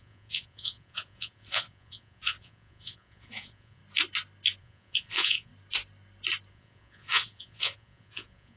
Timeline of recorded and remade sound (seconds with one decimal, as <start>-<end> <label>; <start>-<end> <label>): 0.0-3.8 remade; 3.8-4.6 recorded; 4.6-5.5 remade; 5.5-6.5 recorded; 6.5-8.6 remade